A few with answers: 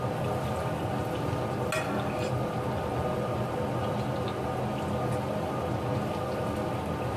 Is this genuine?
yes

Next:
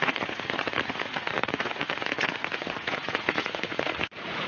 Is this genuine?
no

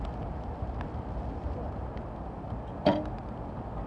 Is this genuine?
yes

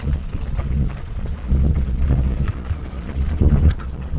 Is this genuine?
no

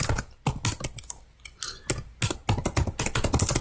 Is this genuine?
yes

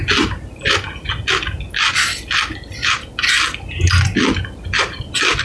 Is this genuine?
yes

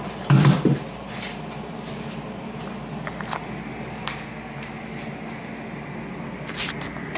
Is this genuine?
yes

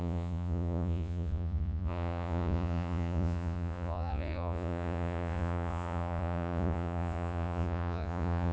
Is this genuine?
no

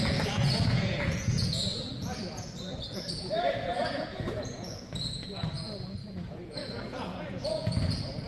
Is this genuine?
no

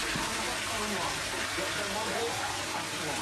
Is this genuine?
yes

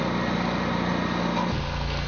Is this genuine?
yes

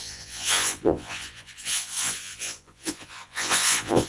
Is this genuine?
no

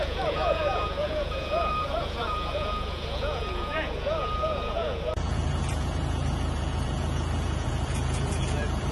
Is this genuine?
no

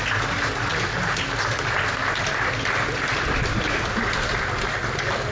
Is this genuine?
yes